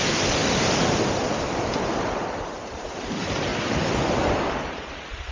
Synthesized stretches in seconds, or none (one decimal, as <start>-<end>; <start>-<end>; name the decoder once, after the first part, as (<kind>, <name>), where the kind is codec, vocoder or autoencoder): 0.0-0.4 (vocoder, BigVGAN v2); 1.3-3.5; 4.4-5.3

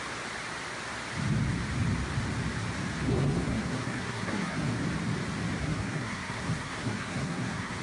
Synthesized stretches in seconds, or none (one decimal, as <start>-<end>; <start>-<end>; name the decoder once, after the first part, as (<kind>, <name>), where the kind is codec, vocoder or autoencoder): 3.1-4.7 (codec, SNAC); 5.6-7.8

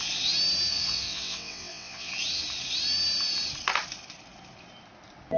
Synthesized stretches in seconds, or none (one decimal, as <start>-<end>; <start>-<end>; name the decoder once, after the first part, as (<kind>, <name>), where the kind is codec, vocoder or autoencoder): 0.7-2.1 (vocoder, WaveNeXt)

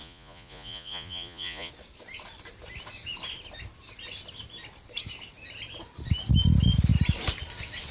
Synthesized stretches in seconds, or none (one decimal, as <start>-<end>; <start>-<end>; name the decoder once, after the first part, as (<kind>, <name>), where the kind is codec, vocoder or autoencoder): 0.0-1.7 (vocoder, Vocos)